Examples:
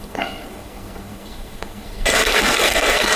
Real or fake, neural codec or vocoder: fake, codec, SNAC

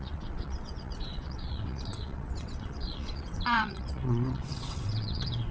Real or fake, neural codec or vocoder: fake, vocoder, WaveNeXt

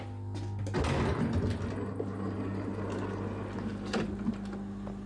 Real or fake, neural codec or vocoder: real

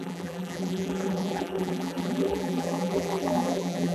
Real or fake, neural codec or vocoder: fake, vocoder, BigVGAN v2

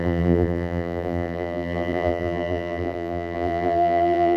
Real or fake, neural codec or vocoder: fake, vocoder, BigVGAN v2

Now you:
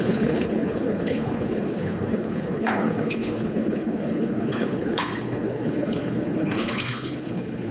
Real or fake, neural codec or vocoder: fake, codec, HILCodec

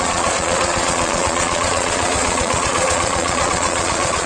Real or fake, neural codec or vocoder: fake, vocoder, Vocos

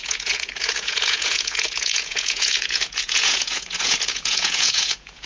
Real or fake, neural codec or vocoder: fake, vocoder, Vocos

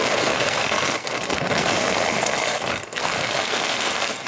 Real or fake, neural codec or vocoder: fake, codec, SNAC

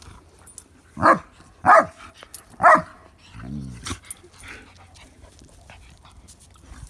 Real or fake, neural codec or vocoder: real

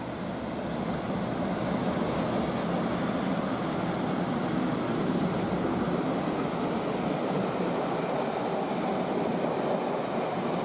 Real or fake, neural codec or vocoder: real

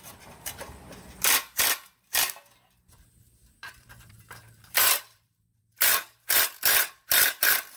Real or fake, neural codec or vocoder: fake, vocoder, BigVGAN v2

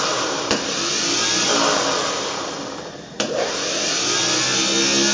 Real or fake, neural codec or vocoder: real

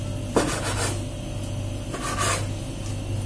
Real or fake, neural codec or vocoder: real